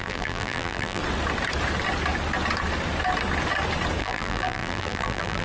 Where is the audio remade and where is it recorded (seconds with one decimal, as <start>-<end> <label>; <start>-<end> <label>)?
0.0-1.0 remade; 1.0-4.0 recorded; 4.0-5.4 remade